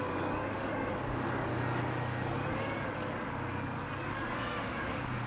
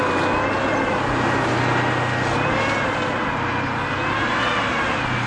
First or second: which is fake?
first